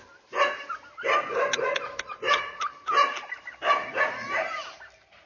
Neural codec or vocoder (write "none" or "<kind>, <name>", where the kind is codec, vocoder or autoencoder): none